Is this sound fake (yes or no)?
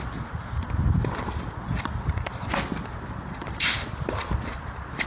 no